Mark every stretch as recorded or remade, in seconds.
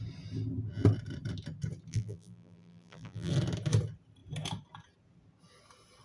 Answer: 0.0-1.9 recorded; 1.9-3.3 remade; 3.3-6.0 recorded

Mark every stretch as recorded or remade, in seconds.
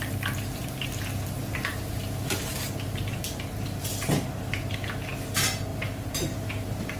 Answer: 0.0-1.7 recorded; 1.7-2.5 remade; 2.5-3.0 recorded; 3.0-3.9 remade; 3.9-5.7 recorded; 5.7-7.0 remade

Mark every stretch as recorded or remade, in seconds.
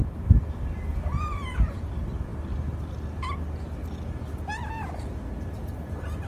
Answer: 0.0-0.5 remade; 0.5-6.3 recorded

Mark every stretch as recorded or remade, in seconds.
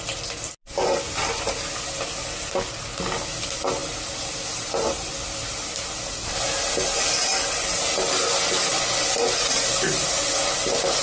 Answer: 0.0-11.0 recorded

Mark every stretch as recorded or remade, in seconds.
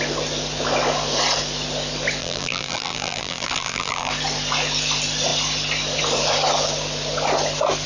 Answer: 0.0-2.2 recorded; 2.2-4.1 remade; 4.1-7.9 recorded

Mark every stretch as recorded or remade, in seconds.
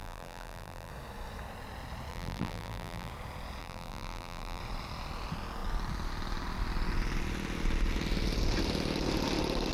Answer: 0.0-0.9 remade; 0.9-2.1 recorded; 2.1-3.1 remade; 3.1-3.6 recorded; 3.6-4.6 remade; 4.6-9.7 recorded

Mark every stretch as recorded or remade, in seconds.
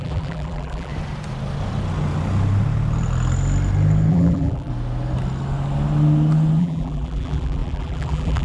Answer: 0.0-0.9 remade; 0.9-4.1 recorded; 4.1-4.7 remade; 4.7-6.6 recorded; 6.6-8.4 remade